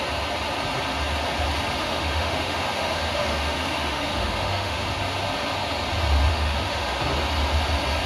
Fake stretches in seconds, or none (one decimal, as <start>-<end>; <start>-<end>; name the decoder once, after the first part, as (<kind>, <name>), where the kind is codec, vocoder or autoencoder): 1.8-4.9 (autoencoder, DAC-VAE); 6.3-7.0